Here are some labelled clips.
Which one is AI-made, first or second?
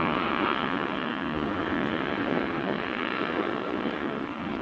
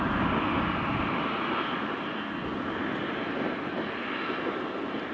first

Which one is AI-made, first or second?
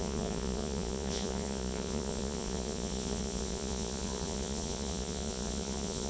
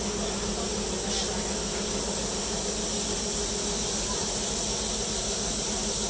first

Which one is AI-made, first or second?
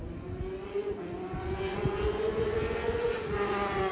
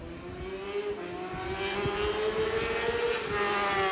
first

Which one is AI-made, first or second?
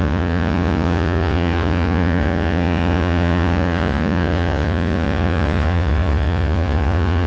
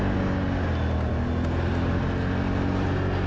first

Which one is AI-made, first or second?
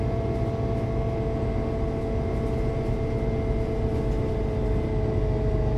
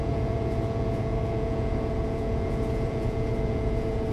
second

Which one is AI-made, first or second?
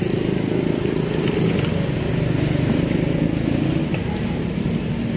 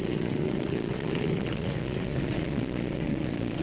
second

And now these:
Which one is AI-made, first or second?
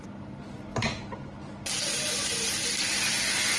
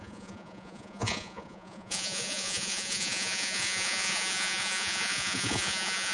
second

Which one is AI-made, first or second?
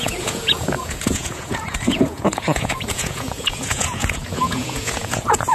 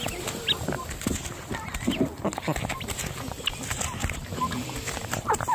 first